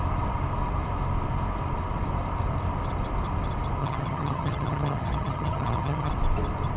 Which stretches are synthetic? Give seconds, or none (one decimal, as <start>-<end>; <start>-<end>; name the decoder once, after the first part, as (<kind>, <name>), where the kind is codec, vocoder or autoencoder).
3.8-6.1 (vocoder, HiFi-GAN)